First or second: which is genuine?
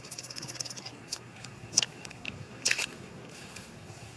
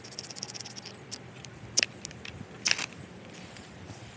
second